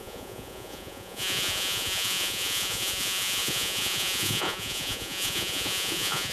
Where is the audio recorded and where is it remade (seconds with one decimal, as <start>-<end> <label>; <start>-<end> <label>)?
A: 0.0-6.3 remade